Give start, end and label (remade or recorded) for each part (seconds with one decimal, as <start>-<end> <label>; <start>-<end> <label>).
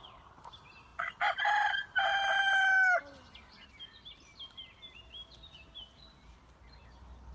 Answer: 0.0-7.3 recorded